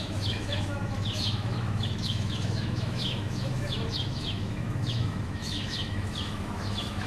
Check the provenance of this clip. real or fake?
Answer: fake